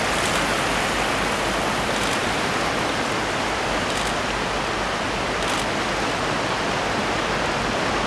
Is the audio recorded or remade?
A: recorded